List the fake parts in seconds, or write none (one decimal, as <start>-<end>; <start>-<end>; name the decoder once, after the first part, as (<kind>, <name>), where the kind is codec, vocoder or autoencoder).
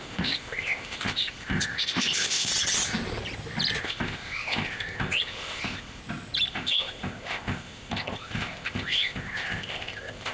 0.0-2.5 (codec, ZipCodec); 3.8-6.0; 6.5-10.3